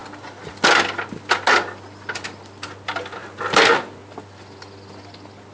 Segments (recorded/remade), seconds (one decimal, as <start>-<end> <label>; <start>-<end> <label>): 0.0-5.5 recorded